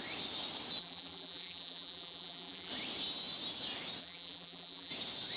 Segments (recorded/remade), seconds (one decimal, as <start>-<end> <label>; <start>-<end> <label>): 0.0-0.8 recorded; 0.8-2.7 remade; 2.7-4.0 recorded; 4.0-4.9 remade; 4.9-5.4 recorded